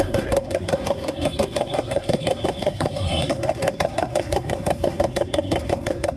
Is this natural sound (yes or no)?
no